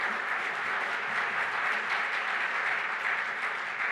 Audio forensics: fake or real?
real